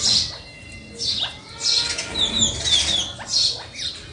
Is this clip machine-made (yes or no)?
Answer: no